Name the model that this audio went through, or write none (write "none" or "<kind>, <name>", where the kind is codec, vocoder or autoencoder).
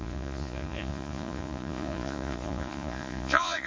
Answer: vocoder, Vocos